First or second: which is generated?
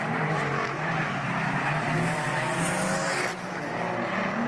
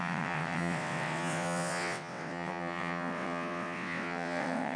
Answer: second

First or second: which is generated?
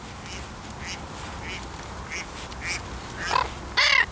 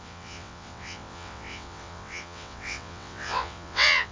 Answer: second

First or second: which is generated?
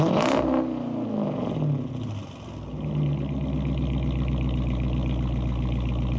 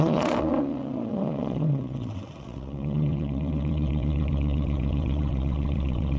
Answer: second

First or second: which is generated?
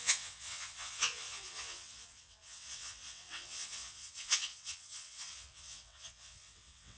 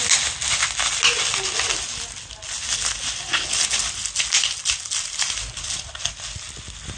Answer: first